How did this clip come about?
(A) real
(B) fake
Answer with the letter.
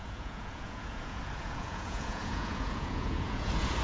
B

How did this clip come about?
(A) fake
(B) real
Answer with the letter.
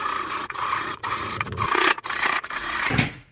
A